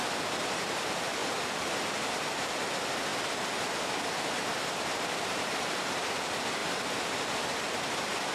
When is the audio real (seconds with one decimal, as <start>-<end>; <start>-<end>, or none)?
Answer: 1.2-2.5; 3.1-4.1; 6.6-7.9